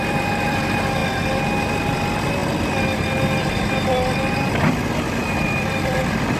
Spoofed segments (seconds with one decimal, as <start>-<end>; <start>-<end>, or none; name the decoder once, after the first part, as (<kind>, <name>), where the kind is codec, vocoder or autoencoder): 0.0-1.0 (vocoder, BigVGAN v2); 1.8-2.4; 3.5-6.4